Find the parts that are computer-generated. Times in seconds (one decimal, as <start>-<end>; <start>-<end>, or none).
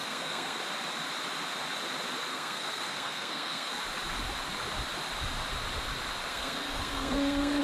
0.0-0.6; 2.3-3.8; 6.3-7.6